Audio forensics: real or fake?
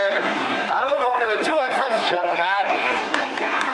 fake